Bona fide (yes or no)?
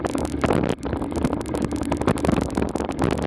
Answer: yes